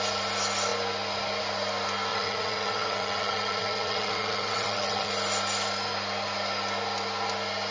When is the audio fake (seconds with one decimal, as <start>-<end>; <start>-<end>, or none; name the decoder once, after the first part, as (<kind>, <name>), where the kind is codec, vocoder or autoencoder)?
2.1-5.1 (vocoder, WaveNeXt)